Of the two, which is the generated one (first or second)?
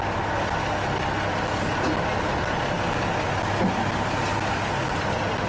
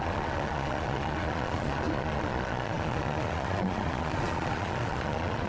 second